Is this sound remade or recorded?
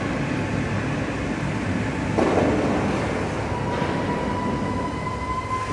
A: recorded